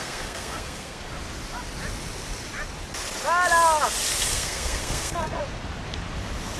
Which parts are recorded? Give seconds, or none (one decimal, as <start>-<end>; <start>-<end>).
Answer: 1.1-4.3; 5.4-6.6